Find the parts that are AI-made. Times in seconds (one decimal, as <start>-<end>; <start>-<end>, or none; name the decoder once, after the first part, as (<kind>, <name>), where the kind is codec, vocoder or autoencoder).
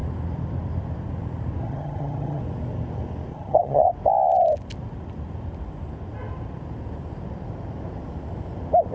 1.6-2.4 (vocoder, HiFi-GAN); 3.3-3.9